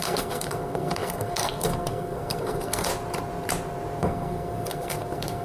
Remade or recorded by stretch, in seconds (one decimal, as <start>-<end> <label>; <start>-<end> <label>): 0.0-2.9 remade; 2.9-4.0 recorded; 4.0-5.4 remade